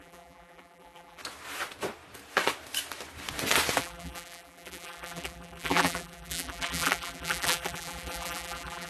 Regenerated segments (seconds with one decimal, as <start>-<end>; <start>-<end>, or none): 0.0-1.2; 3.8-8.9

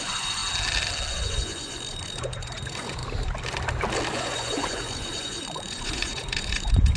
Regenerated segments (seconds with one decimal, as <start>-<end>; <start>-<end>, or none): 0.0-0.4; 1.1-3.0; 4.1-7.0

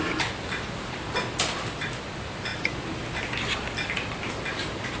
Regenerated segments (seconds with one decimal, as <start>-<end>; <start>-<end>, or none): none

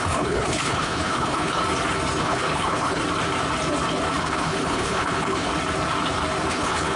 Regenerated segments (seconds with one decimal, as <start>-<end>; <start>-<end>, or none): 0.0-1.6; 2.2-3.0; 4.2-5.5; 6.5-7.0

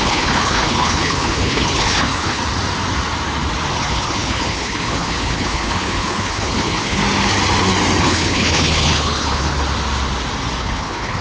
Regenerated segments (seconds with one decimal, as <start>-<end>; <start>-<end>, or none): 0.0-2.4; 3.8-7.0; 8.0-9.5; 10.6-11.2

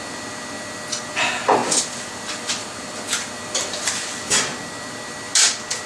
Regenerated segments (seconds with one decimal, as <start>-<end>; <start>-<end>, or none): none